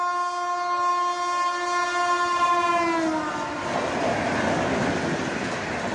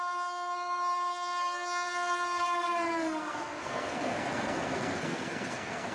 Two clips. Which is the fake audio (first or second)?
second